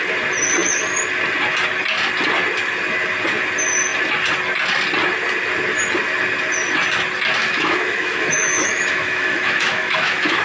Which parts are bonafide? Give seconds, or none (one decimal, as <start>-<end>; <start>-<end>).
0.0-7.4